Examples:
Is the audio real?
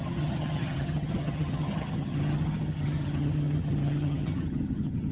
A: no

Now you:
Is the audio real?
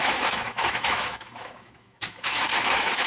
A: no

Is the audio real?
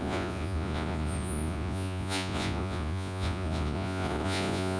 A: no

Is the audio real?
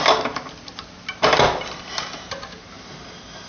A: yes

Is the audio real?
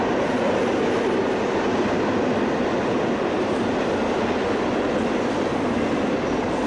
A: yes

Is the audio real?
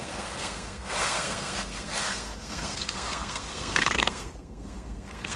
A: no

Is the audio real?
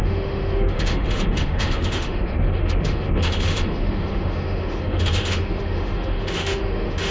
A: no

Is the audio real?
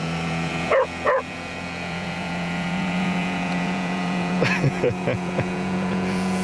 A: no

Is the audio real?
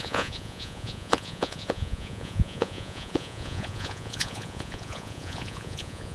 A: no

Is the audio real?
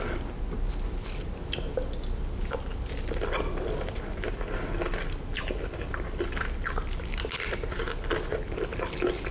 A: yes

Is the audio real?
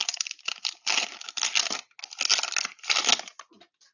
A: yes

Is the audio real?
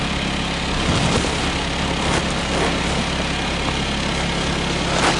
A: yes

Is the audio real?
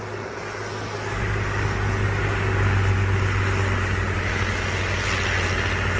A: yes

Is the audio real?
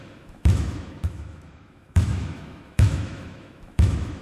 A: no